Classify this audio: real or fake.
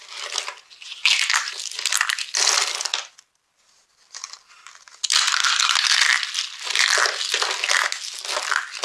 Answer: real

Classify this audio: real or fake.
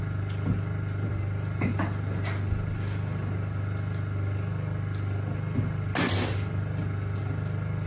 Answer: real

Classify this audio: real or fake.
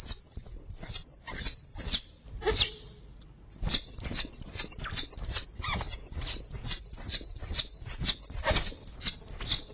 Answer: real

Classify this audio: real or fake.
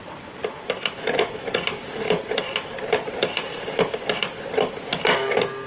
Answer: fake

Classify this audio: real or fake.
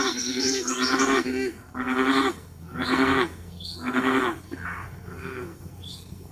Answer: fake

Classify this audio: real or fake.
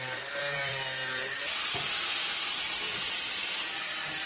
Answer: fake